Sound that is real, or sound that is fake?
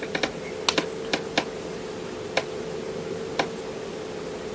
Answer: real